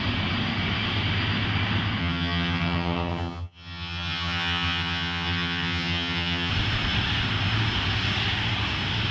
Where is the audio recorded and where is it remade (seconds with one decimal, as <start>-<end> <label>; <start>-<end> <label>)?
0.0-2.0 recorded; 2.0-6.5 remade; 6.5-9.1 recorded